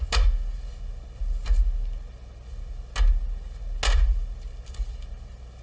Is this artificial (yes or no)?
no